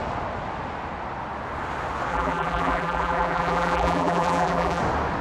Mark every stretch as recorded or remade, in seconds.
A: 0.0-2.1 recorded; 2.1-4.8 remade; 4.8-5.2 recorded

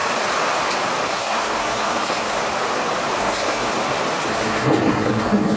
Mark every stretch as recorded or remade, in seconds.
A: 0.0-1.1 recorded; 1.1-2.4 remade; 2.4-3.2 recorded; 3.2-3.7 remade; 3.7-4.3 recorded; 4.3-5.6 remade

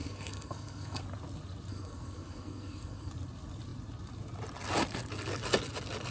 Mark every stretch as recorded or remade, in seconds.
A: 0.0-1.0 remade; 1.0-1.7 recorded; 1.7-3.1 remade; 3.1-6.1 recorded

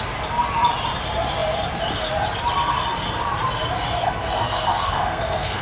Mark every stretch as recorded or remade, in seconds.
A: 0.0-4.0 recorded; 4.0-5.6 remade

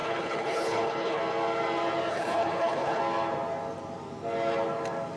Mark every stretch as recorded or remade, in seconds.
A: 0.0-1.2 remade; 1.2-2.1 recorded; 2.1-3.0 remade; 3.0-5.2 recorded

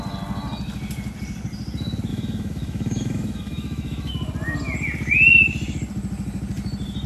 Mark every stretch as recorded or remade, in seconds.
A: 0.0-2.1 recorded; 2.1-4.1 remade; 4.1-7.1 recorded

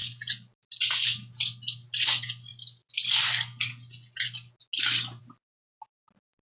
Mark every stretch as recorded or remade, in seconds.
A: 0.0-6.6 recorded

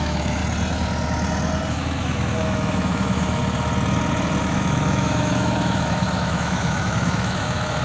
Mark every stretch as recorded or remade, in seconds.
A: 0.0-0.4 remade; 0.4-1.7 recorded; 1.7-3.4 remade; 3.4-4.4 recorded; 4.4-7.8 remade